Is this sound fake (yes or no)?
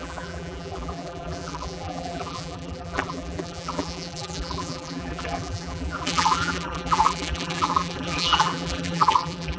yes